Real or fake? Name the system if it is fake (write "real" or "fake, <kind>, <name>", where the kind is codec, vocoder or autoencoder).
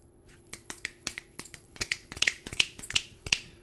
fake, vocoder, Vocos